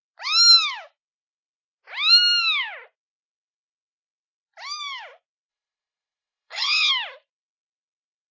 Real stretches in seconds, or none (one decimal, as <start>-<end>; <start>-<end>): 0.0-5.5; 6.9-8.3